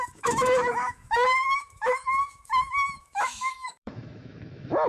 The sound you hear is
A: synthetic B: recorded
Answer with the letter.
A